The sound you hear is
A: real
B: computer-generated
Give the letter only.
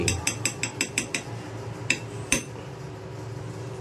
A